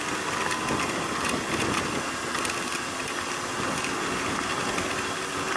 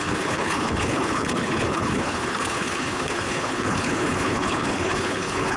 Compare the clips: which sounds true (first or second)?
first